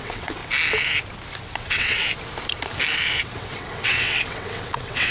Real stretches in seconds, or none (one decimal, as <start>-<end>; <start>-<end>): 0.4-1.4; 2.0-3.2